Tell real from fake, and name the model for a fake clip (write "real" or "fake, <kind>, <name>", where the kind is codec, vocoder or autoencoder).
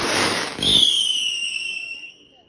fake, codec, DAC